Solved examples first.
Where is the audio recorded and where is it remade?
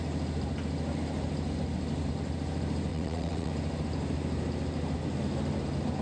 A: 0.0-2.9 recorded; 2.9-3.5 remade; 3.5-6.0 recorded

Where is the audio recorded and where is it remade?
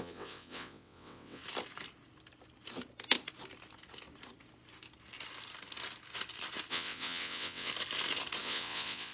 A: 0.0-1.4 remade; 1.4-6.7 recorded; 6.7-7.7 remade; 7.7-8.4 recorded; 8.4-9.1 remade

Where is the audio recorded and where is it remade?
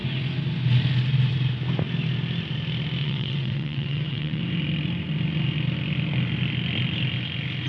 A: 0.0-3.0 recorded; 3.0-4.4 remade; 4.4-7.7 recorded